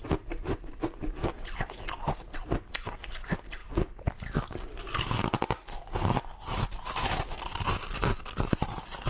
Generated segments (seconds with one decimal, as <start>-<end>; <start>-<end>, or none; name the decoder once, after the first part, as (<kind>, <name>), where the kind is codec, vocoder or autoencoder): 1.2-1.7 (vocoder, BigVGAN v2)